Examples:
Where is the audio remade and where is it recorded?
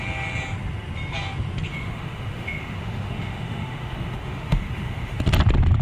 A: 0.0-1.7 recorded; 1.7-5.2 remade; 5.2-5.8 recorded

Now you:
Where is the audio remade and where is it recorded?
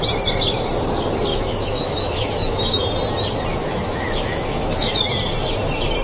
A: 0.0-1.3 recorded; 1.3-2.8 remade; 2.8-3.5 recorded; 3.5-5.0 remade; 5.0-6.0 recorded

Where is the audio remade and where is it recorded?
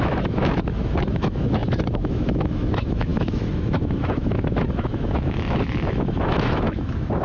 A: 0.0-7.2 remade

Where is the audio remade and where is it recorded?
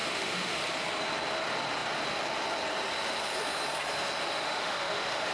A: 0.0-0.6 remade; 0.6-4.3 recorded; 4.3-5.3 remade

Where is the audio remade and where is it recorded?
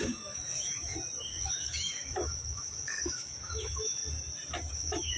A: 0.0-0.9 remade; 0.9-1.5 recorded; 1.5-4.0 remade; 4.0-4.7 recorded; 4.7-5.2 remade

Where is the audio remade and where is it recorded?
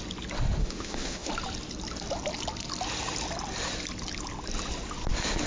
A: 0.0-0.6 recorded; 0.6-1.3 remade; 1.3-5.5 recorded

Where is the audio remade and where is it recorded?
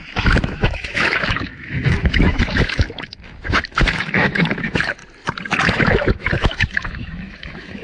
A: 0.0-5.0 remade; 5.0-5.5 recorded; 5.5-7.8 remade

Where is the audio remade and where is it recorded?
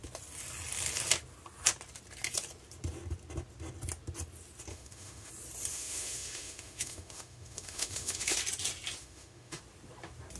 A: 0.0-4.7 recorded; 4.7-5.3 remade; 5.3-5.7 recorded; 5.7-8.4 remade; 8.4-9.0 recorded; 9.0-9.6 remade; 9.6-10.4 recorded